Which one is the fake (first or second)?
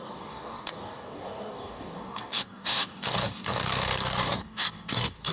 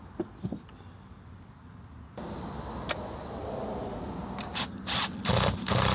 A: first